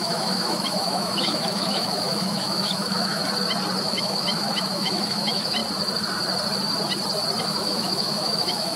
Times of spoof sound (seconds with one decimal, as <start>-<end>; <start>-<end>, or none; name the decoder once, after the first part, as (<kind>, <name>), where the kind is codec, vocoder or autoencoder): 0.0-3.2 (autoencoder, DAC-VAE); 3.8-5.6; 7.4-8.8